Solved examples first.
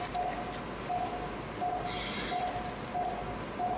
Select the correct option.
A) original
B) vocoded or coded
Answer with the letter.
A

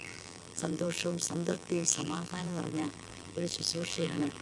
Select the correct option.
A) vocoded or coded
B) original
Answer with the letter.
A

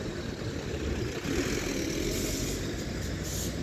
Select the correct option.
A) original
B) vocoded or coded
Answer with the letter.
A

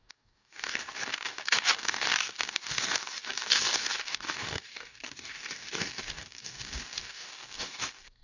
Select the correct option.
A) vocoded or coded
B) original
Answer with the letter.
A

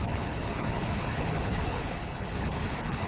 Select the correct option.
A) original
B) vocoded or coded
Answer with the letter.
B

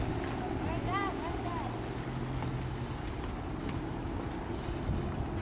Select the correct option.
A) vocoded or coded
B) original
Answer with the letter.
B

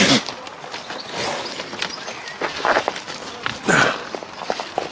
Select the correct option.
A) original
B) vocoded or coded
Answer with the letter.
A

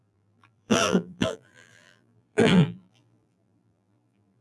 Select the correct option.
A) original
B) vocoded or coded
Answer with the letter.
B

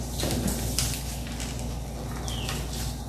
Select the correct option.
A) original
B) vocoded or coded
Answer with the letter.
A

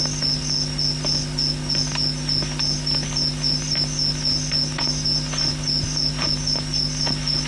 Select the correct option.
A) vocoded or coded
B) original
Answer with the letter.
B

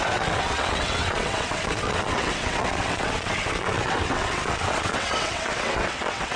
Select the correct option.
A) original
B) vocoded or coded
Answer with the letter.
B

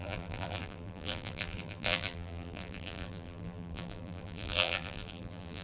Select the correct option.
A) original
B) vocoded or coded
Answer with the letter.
B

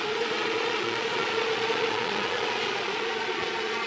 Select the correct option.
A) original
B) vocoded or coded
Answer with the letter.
B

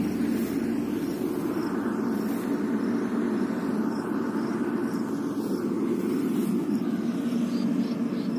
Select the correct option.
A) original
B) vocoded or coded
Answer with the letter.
A